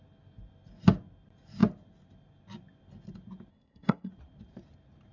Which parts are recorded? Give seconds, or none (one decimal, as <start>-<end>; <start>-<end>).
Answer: 0.0-3.5; 4.1-5.1